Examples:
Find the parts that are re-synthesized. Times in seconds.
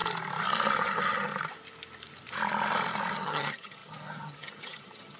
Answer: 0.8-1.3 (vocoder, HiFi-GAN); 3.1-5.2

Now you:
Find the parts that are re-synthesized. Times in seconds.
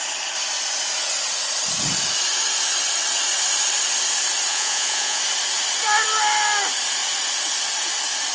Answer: 4.5-5.2 (vocoder, Vocos)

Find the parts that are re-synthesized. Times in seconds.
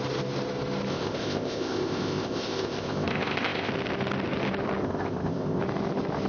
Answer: 0.9-3.7 (codec, ZipCodec); 4.8-5.6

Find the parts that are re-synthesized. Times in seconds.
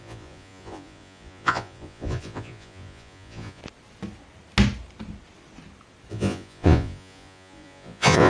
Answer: 0.0-3.6 (vocoder, Vocos); 6.1-8.3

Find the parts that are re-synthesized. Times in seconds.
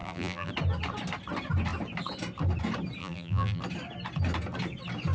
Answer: 0.0-0.5 (vocoder, BigVGAN v2); 3.0-3.6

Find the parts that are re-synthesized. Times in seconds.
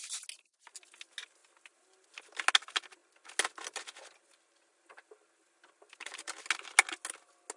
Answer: none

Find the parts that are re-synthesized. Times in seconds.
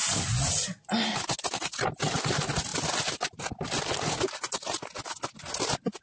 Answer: none